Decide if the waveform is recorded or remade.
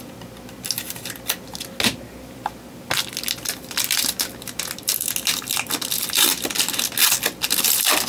recorded